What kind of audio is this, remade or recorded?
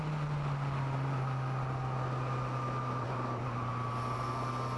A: recorded